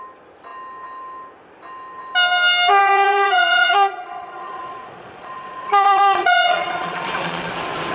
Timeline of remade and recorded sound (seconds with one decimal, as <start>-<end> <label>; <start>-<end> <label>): 0.0-2.8 recorded; 2.8-7.5 remade; 7.5-7.9 recorded